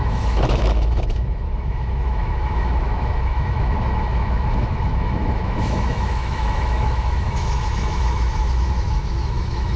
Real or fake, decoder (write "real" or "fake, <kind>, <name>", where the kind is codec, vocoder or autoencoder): fake, autoencoder, DAC-VAE